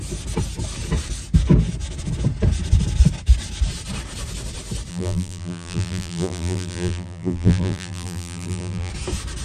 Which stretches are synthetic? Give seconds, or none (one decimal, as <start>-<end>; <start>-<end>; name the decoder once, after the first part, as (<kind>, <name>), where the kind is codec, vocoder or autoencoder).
4.9-8.9 (vocoder, BigVGAN v2)